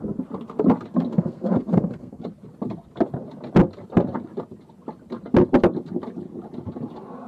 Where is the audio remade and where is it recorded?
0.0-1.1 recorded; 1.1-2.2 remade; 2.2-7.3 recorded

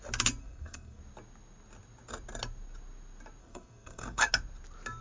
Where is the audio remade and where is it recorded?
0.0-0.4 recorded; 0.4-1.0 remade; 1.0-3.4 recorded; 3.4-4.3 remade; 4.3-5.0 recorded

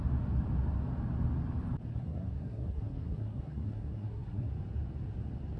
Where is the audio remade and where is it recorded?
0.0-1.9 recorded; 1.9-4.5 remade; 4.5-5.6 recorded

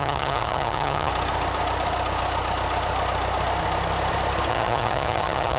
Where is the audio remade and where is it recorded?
0.0-1.1 remade; 1.1-4.5 recorded; 4.5-5.6 remade

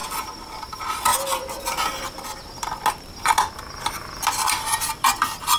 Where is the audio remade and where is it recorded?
0.0-0.7 recorded; 0.7-1.1 remade; 1.1-4.5 recorded; 4.5-5.6 remade

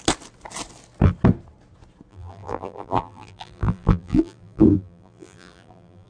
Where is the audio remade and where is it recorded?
0.0-2.1 recorded; 2.1-6.1 remade

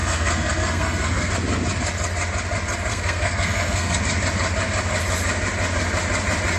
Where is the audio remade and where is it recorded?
0.0-1.3 remade; 1.3-2.9 recorded; 2.9-4.0 remade; 4.0-6.6 recorded

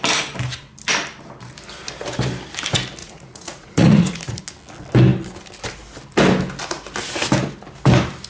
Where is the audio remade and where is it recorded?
0.0-3.0 recorded; 3.0-4.4 remade; 4.4-8.3 recorded